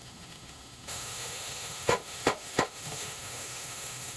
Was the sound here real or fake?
fake